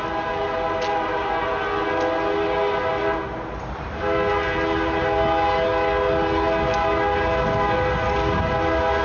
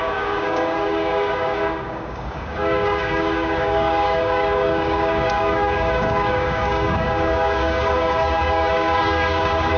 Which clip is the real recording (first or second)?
first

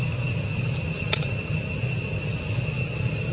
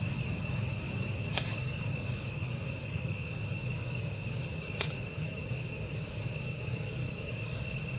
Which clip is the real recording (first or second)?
first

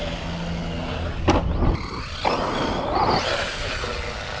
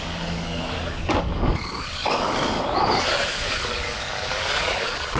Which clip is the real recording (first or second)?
first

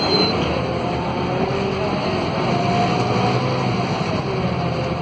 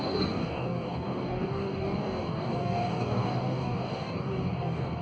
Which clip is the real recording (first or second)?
first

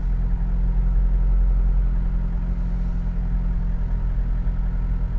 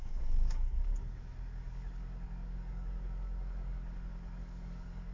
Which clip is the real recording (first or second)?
first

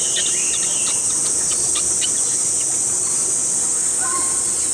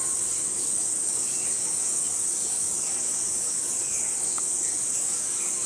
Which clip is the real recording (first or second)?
first